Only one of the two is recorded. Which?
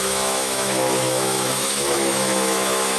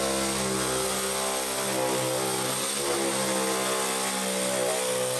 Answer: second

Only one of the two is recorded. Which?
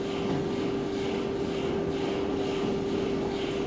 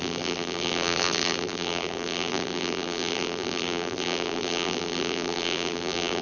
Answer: first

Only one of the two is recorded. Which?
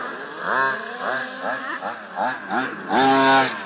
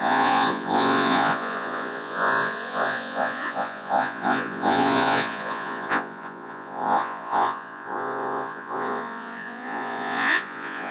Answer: first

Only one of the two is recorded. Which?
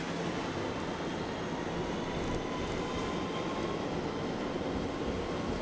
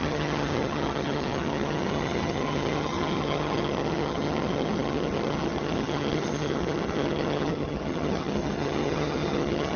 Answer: first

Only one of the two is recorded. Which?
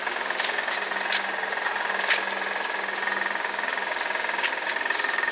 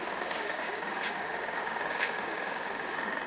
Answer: first